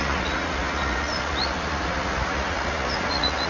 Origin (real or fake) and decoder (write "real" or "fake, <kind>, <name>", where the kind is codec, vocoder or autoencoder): fake, vocoder, Vocos